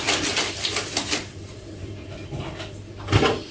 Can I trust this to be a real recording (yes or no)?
yes